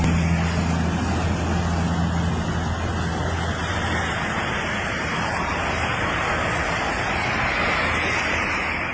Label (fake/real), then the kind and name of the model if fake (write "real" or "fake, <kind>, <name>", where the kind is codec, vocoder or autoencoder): real